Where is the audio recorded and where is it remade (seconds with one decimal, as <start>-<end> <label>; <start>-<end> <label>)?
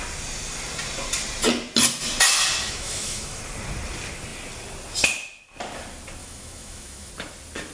0.0-2.6 recorded; 2.6-3.4 remade; 3.4-6.2 recorded; 6.2-7.1 remade; 7.1-7.7 recorded